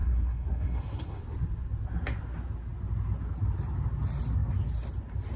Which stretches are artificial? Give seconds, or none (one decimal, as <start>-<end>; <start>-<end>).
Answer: 0.0-1.2